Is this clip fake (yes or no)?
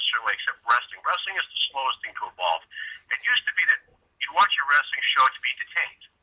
no